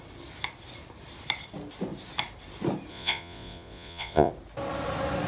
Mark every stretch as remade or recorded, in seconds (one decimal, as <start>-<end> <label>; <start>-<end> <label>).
0.0-2.9 recorded; 2.9-4.3 remade; 4.3-5.3 recorded